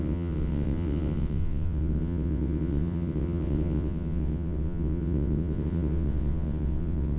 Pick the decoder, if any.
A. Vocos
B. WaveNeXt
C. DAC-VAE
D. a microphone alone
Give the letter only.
B